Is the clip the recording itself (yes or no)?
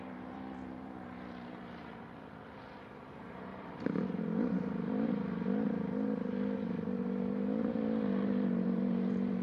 no